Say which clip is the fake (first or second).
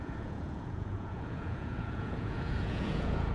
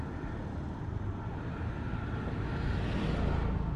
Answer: first